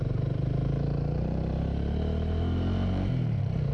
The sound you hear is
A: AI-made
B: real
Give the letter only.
A